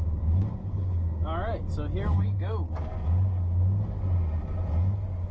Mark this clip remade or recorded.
recorded